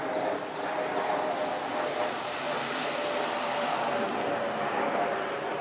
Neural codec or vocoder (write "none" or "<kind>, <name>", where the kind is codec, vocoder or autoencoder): none